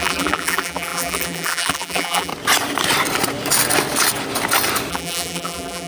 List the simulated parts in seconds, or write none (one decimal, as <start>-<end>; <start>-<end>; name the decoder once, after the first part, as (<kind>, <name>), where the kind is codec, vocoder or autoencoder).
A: 0.0-2.3 (vocoder, BigVGAN v2); 4.9-5.9